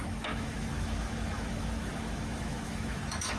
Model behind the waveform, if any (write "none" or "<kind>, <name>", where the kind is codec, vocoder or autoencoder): autoencoder, DAC-VAE